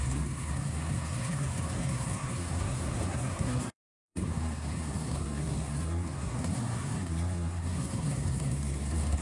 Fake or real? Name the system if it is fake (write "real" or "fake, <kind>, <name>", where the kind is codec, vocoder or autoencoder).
fake, codec, SNAC